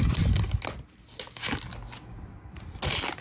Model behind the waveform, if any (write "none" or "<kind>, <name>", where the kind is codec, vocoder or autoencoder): none